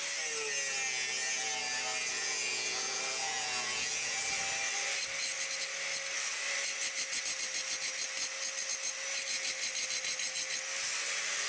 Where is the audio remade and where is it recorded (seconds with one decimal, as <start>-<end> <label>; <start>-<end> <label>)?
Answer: 0.0-2.1 recorded; 2.1-4.2 remade; 4.2-11.5 recorded